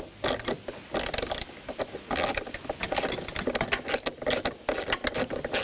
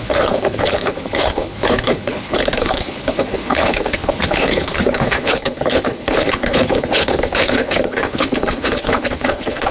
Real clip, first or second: first